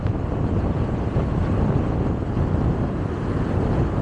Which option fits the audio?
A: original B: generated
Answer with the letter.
A